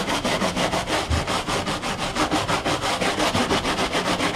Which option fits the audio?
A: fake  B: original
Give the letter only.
B